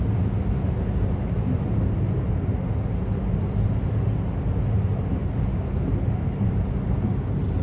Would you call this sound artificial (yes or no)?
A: no